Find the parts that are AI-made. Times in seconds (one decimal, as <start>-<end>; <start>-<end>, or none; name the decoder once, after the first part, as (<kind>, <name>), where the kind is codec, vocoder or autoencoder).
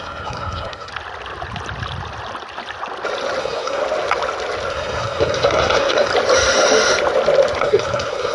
0.0-0.9 (codec, SNAC); 3.4-3.8; 4.7-6.1; 7.6-8.3